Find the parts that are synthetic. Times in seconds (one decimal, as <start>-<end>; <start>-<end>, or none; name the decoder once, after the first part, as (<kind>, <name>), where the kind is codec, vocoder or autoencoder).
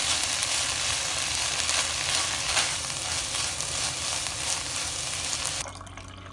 none